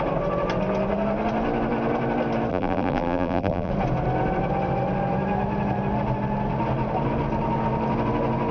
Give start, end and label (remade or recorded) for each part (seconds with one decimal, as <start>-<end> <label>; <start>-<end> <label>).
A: 0.0-2.5 recorded; 2.5-3.7 remade; 3.7-8.5 recorded

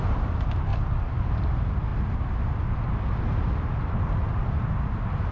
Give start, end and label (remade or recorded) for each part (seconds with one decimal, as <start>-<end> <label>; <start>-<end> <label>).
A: 0.0-0.7 recorded; 0.7-1.2 remade; 1.2-5.3 recorded

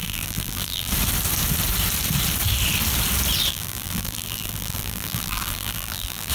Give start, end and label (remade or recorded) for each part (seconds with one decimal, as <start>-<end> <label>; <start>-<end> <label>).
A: 0.0-0.9 remade; 0.9-3.5 recorded; 3.5-6.3 remade